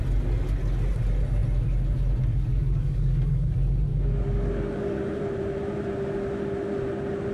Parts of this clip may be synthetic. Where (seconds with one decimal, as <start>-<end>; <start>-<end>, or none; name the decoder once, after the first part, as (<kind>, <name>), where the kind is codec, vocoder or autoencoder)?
2.3-3.5 (codec, DAC); 3.9-5.2